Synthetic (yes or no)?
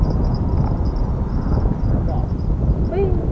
no